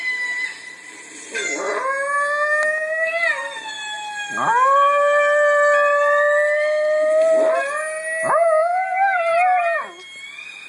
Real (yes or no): yes